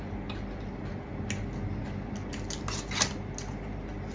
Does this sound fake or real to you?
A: real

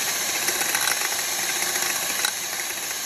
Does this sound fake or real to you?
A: real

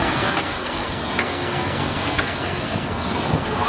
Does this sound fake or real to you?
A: fake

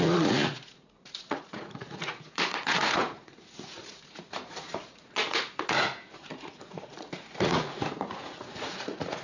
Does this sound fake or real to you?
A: fake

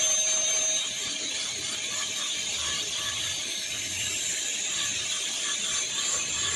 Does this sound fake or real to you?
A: real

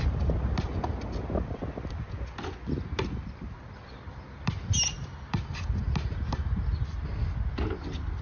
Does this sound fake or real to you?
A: real